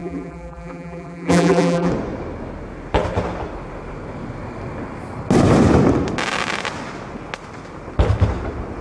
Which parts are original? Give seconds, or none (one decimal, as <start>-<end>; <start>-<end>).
1.9-8.8